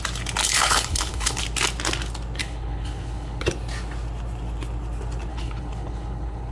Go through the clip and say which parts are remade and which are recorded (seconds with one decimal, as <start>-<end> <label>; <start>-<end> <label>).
0.0-0.4 recorded; 0.4-1.4 remade; 1.4-2.4 recorded; 2.4-3.4 remade; 3.4-5.3 recorded; 5.3-6.5 remade